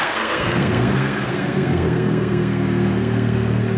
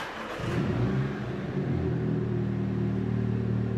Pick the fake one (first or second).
first